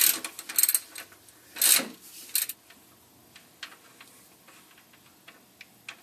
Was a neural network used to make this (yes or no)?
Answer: no